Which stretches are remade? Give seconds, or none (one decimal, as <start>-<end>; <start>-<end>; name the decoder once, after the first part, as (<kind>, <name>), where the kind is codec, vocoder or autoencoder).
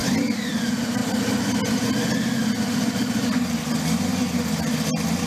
none